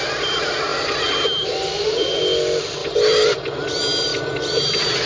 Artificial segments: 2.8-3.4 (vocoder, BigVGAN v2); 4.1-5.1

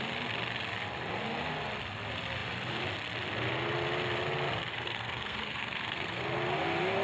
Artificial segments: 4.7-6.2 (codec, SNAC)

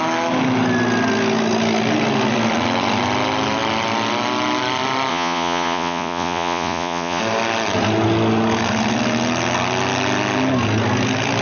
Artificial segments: 5.1-7.2 (vocoder, Vocos)